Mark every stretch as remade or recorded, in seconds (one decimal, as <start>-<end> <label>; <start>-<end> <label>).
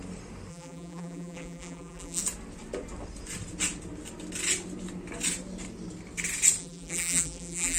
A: 0.0-0.5 recorded; 0.5-2.2 remade; 2.2-6.6 recorded; 6.6-7.8 remade